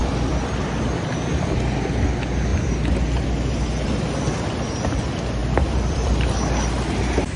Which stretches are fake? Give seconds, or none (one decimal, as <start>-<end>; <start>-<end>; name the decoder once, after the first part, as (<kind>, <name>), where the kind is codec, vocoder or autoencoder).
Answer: 0.0-0.8 (vocoder, BigVGAN v2); 5.4-6.3

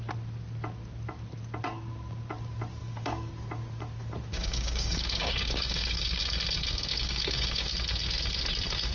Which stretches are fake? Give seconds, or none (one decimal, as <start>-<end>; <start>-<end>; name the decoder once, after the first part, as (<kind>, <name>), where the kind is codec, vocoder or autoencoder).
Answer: 2.8-3.3 (codec, DAC); 4.3-6.2; 6.9-7.7

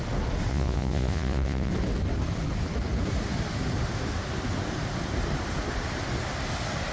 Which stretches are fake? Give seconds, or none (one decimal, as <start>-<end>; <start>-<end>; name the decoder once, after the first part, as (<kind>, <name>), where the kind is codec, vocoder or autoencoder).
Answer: 0.5-1.7 (vocoder, Vocos)

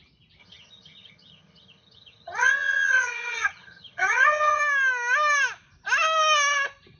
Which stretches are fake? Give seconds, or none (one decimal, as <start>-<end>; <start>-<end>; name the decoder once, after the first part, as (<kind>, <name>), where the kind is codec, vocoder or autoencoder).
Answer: 0.4-4.6 (vocoder, HiFi-GAN)

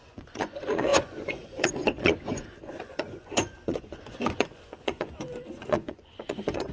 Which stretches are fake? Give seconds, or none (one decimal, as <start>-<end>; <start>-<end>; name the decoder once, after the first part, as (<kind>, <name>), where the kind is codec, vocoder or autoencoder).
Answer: 0.0-6.7 (vocoder, Vocos)